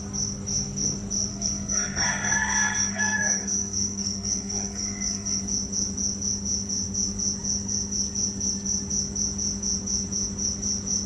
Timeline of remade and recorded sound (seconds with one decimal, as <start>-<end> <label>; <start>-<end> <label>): 0.0-1.3 recorded; 1.3-5.4 remade; 5.4-11.1 recorded